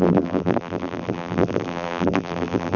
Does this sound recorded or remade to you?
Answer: remade